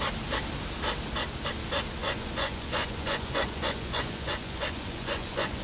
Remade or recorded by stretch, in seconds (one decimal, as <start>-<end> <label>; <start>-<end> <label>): 0.0-2.0 recorded; 2.0-5.6 remade